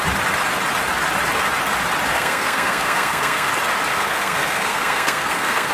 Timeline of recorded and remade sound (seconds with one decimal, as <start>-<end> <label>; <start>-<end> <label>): 0.0-2.1 recorded; 2.1-3.5 remade; 3.5-3.9 recorded; 3.9-5.7 remade

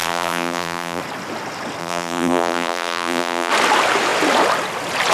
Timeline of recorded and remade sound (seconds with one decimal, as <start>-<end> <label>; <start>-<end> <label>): 0.0-1.0 remade; 1.0-1.8 recorded; 1.8-3.5 remade; 3.5-5.1 recorded